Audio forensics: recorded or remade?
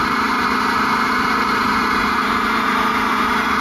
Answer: remade